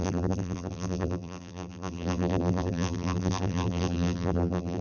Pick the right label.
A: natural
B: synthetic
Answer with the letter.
B